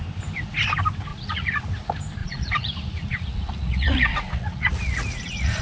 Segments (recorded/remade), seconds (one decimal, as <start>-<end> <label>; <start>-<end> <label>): 0.0-1.1 recorded; 1.1-1.6 remade; 1.6-2.2 recorded; 2.2-5.6 remade